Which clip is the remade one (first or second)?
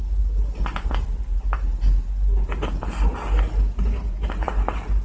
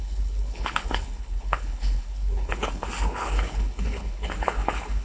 second